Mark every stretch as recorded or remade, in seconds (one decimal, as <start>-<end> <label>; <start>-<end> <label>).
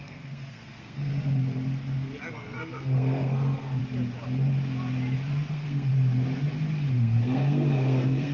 0.0-1.1 remade; 1.1-2.3 recorded; 2.3-3.8 remade; 3.8-5.5 recorded; 5.5-5.9 remade; 5.9-6.9 recorded; 6.9-8.3 remade